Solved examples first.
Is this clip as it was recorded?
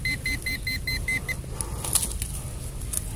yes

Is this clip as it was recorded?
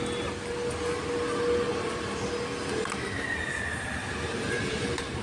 yes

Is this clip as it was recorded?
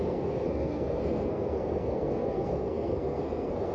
no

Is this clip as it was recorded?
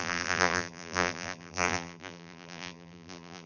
no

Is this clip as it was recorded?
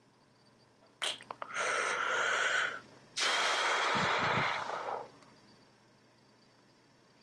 yes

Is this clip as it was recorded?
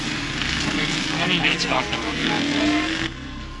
no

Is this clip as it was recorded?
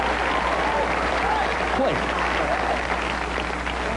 yes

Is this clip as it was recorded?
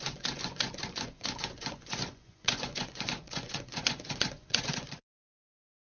no